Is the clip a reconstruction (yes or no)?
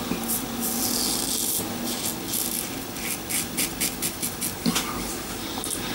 no